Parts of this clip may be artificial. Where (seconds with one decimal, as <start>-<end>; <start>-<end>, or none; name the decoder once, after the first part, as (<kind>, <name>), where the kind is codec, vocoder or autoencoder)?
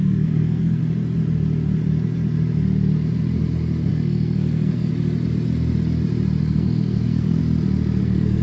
0.0-0.8 (codec, SNAC); 3.9-4.9; 6.4-7.4; 8.0-8.4